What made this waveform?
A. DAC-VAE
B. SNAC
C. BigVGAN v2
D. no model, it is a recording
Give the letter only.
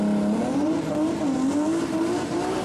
C